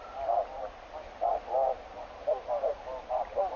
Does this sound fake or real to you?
real